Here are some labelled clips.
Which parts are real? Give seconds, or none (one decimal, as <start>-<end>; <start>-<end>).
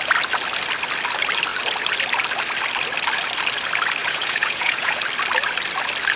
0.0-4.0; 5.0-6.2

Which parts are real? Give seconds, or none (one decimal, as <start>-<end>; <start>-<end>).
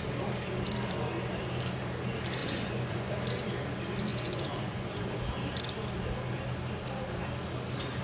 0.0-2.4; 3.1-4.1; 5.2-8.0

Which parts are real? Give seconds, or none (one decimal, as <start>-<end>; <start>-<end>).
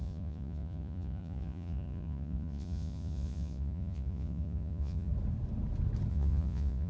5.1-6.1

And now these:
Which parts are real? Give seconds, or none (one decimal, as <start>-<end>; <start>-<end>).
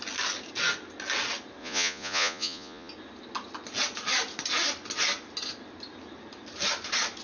0.0-1.6; 2.9-7.2